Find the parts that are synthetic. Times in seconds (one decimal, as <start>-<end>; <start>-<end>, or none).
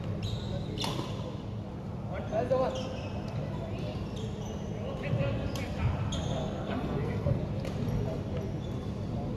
6.4-7.4